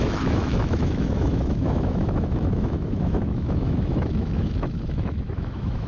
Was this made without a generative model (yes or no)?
no